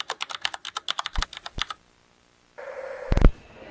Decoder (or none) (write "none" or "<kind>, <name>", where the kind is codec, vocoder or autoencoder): none